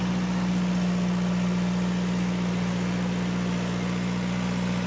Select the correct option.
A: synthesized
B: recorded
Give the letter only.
B